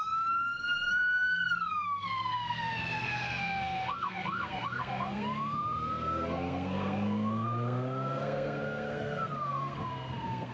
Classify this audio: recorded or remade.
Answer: remade